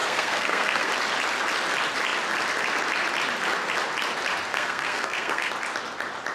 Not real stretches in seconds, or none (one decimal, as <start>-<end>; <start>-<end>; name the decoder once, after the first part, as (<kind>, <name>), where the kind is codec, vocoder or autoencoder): 0.0-0.9 (codec, SNAC); 4.5-5.5